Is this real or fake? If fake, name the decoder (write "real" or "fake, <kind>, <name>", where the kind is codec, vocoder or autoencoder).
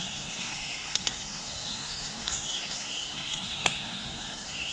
fake, codec, SNAC